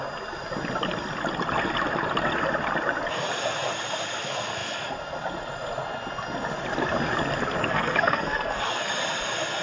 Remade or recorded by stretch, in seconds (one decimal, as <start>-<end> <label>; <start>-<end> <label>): 0.0-7.6 recorded; 7.6-8.9 remade; 8.9-9.6 recorded